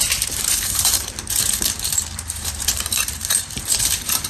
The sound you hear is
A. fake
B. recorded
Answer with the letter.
A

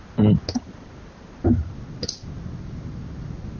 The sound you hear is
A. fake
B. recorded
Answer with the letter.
B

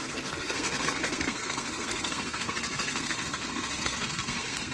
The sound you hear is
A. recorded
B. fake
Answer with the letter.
B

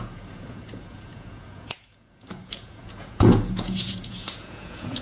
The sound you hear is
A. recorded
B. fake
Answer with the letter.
B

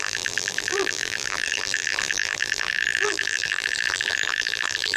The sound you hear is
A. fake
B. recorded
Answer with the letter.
A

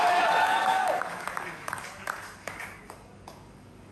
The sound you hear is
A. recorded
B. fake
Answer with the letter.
B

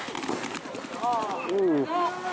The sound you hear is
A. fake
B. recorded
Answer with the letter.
B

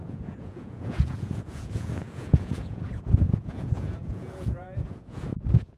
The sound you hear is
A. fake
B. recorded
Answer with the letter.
A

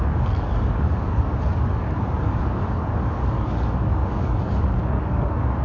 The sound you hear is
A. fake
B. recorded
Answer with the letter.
A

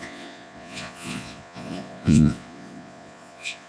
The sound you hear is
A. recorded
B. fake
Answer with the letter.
B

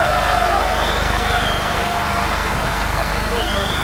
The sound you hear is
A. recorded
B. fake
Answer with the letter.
B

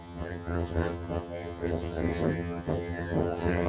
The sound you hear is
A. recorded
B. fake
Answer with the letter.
B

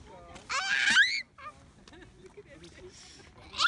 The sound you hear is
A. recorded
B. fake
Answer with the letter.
A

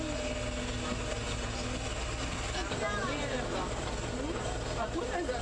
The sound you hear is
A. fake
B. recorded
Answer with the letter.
B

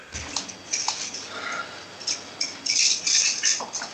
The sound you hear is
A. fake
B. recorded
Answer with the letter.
B